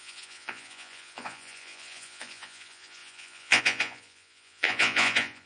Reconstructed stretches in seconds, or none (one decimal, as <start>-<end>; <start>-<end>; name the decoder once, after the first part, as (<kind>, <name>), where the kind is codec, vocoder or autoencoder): 0.0-5.5 (vocoder, Vocos)